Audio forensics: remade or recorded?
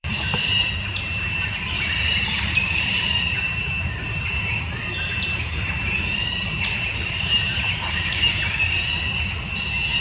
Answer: remade